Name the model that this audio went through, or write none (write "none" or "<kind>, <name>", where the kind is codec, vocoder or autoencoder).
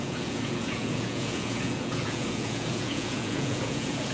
vocoder, Vocos